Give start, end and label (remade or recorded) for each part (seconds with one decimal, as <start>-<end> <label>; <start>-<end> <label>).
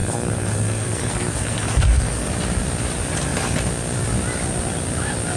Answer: 0.0-2.3 remade; 2.3-5.4 recorded